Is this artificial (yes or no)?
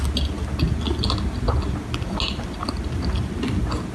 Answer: no